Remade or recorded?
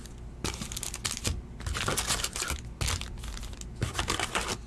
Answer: recorded